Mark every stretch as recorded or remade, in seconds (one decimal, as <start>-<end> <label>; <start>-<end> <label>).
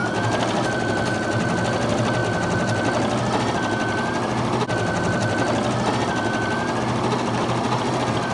0.0-8.3 recorded